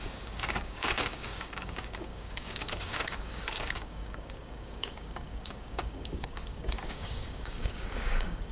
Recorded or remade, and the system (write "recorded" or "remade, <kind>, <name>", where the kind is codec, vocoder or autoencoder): remade, codec, DAC